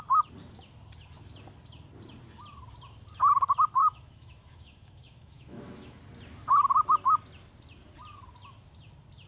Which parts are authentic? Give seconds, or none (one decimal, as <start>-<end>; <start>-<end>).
0.0-3.8; 6.0-9.3